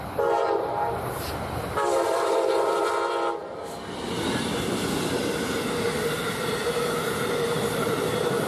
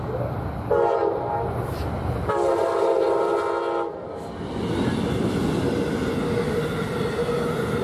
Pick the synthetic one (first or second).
first